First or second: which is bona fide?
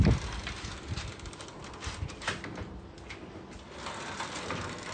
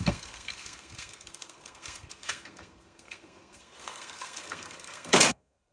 first